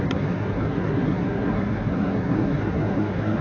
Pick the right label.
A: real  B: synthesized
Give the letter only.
B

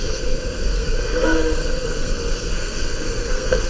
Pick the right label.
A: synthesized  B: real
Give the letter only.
A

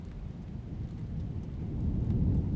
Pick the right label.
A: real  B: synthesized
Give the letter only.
A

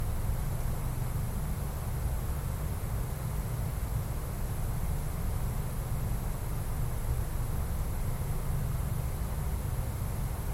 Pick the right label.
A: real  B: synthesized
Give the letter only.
A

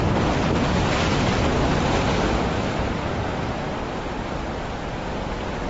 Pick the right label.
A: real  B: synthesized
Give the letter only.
A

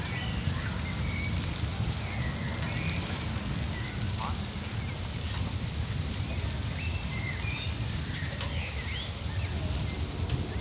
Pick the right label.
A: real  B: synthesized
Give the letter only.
A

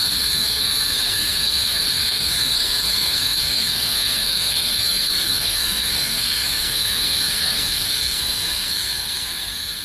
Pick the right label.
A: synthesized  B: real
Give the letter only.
A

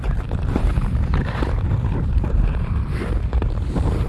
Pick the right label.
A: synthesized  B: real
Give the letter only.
A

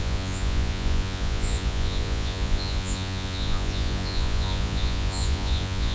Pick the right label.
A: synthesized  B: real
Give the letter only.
A